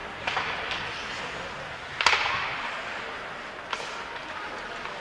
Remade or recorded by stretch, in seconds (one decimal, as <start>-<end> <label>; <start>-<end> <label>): 0.0-5.0 recorded

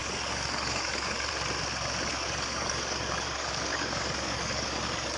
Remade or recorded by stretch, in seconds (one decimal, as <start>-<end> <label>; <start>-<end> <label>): 0.0-1.3 remade; 1.3-2.1 recorded; 2.1-5.2 remade

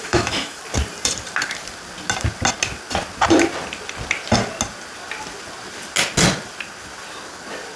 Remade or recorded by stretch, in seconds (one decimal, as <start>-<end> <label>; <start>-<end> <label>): 0.0-0.6 remade; 0.6-7.8 recorded

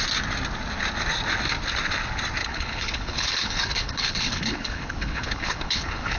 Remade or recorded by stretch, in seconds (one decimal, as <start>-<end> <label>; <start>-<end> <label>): 0.0-2.4 recorded; 2.4-6.2 remade

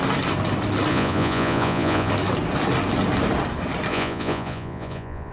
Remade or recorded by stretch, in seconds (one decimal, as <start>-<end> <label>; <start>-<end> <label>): 0.0-0.9 recorded; 0.9-2.1 remade; 2.1-3.9 recorded; 3.9-5.3 remade

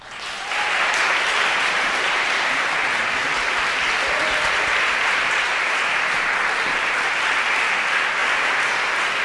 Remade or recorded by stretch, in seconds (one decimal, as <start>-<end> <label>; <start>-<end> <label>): 0.0-1.5 recorded; 1.5-2.8 remade; 2.8-5.5 recorded; 5.5-6.3 remade; 6.3-9.2 recorded

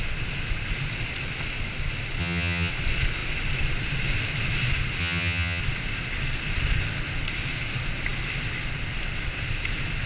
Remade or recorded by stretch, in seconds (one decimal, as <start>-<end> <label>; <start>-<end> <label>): 0.0-2.2 recorded; 2.2-2.7 remade; 2.7-5.0 recorded; 5.0-5.6 remade; 5.6-10.1 recorded